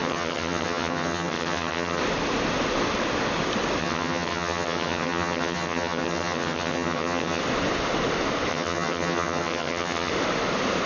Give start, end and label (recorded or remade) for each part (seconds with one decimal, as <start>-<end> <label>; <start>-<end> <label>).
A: 0.0-2.0 remade; 2.0-3.8 recorded; 3.8-7.4 remade; 7.4-8.5 recorded; 8.5-10.1 remade; 10.1-10.9 recorded